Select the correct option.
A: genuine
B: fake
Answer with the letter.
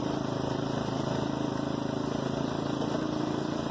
A